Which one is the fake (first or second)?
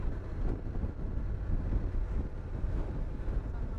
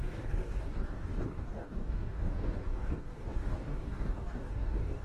second